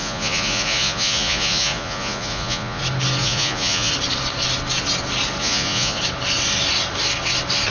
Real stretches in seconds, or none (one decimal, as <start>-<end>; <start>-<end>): 2.8-3.2; 3.9-5.4; 6.0-7.7